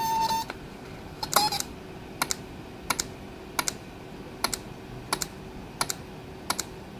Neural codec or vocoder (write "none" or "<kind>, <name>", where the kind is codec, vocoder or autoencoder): none